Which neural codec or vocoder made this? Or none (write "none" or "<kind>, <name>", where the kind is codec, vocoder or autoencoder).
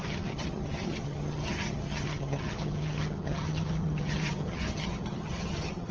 vocoder, HiFi-GAN